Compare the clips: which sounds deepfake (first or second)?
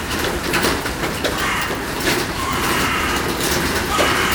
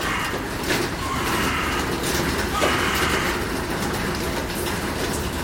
first